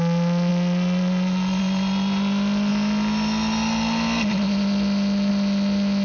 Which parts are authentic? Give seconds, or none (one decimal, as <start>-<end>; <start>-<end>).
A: 0.0-6.0